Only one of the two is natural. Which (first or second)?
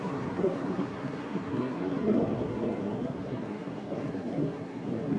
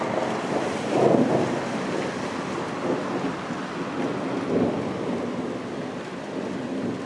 second